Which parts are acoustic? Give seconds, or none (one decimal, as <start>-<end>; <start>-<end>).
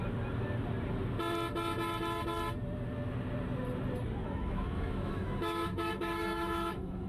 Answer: 0.0-4.2